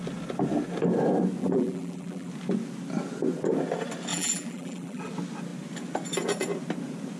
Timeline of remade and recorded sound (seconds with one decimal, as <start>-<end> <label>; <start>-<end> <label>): 0.0-1.4 recorded; 1.4-2.3 remade; 2.3-4.1 recorded; 4.1-5.1 remade; 5.1-7.2 recorded